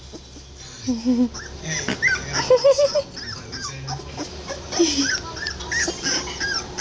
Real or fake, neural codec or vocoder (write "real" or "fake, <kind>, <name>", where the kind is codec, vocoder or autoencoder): real